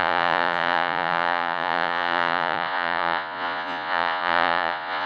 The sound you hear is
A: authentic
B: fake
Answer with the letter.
B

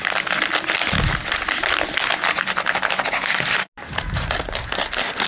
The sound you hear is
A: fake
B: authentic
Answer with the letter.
B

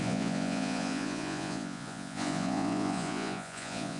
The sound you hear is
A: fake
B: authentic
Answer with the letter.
A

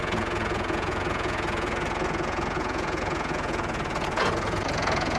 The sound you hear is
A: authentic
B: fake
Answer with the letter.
B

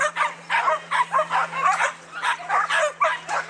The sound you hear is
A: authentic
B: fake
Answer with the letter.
A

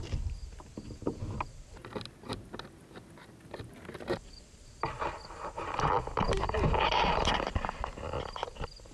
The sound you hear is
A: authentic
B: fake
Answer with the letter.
A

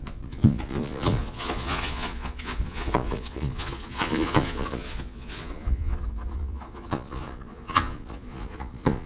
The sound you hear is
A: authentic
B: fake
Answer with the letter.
B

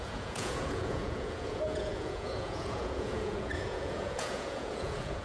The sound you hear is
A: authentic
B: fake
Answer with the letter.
B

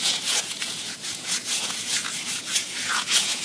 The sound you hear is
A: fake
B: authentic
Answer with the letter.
A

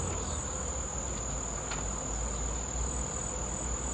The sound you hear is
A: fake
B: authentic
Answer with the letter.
B